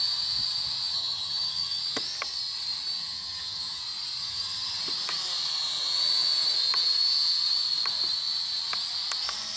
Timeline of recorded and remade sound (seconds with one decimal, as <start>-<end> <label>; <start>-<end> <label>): 0.0-0.9 recorded; 0.9-1.8 remade; 1.8-3.0 recorded; 3.0-3.8 remade; 3.8-4.2 recorded; 4.2-4.8 remade; 4.8-9.6 recorded